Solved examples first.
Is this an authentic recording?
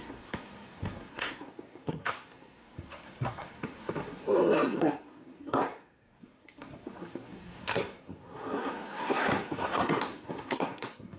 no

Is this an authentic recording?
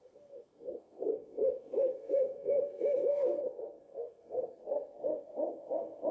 no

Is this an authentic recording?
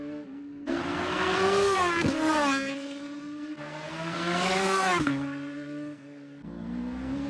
no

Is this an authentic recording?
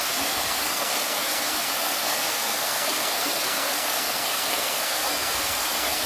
no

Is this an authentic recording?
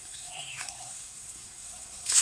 no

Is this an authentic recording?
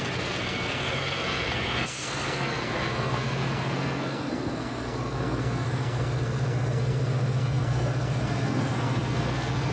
no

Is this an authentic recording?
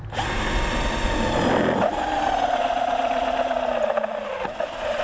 yes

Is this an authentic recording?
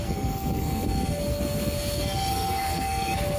no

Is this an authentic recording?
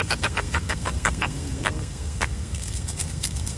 no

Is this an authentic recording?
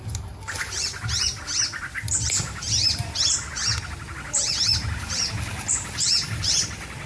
yes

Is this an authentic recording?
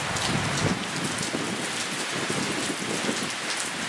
yes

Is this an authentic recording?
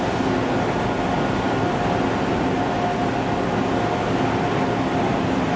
yes